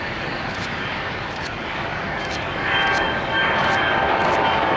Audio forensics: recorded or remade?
remade